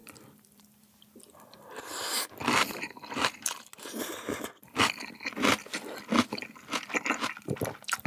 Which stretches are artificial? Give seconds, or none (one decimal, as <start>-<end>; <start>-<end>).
none